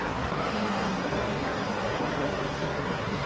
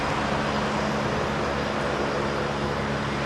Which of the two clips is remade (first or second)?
first